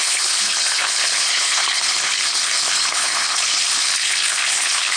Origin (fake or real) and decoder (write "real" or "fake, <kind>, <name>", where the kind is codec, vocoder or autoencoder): fake, codec, HILCodec